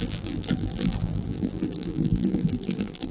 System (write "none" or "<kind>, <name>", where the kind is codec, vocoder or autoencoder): vocoder, BigVGAN v2